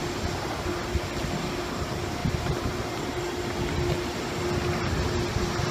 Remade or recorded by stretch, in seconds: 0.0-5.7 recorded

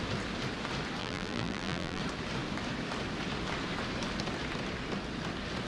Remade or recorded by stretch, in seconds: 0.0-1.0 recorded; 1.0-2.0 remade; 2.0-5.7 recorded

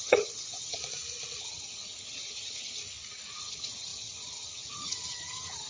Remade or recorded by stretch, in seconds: 0.0-0.8 remade; 0.8-1.4 recorded; 1.4-2.8 remade; 2.8-3.4 recorded; 3.4-5.7 remade

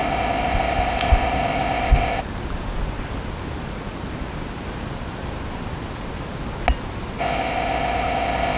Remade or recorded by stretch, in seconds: 0.0-2.2 remade; 2.2-7.2 recorded; 7.2-8.6 remade

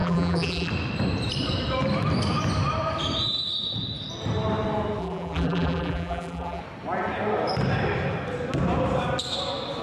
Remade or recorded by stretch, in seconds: 0.0-0.7 remade; 0.7-5.0 recorded; 5.0-6.6 remade; 6.6-9.8 recorded

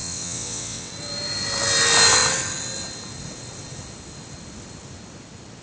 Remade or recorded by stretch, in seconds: 0.0-0.9 remade; 0.9-5.6 recorded